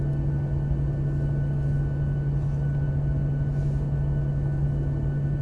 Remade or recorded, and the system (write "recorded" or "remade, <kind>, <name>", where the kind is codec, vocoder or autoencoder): recorded